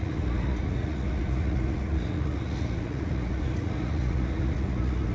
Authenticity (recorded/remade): remade